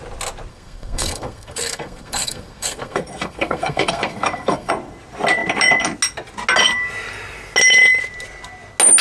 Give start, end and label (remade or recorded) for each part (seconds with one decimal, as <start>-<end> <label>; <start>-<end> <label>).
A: 0.0-0.5 recorded; 0.5-4.7 remade; 4.7-9.0 recorded